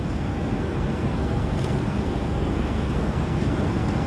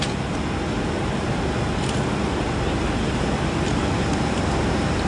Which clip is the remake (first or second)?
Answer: first